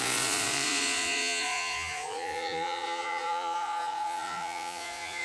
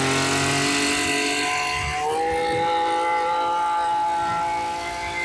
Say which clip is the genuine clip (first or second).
second